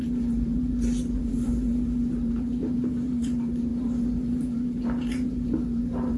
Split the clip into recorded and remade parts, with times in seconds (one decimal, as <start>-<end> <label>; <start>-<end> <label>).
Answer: 0.0-6.2 remade